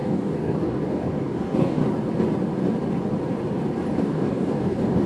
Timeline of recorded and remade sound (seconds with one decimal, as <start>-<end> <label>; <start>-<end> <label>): 0.0-1.8 remade; 1.8-4.0 recorded; 4.0-5.1 remade